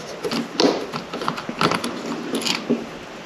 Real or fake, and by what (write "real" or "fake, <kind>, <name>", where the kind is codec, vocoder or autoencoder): real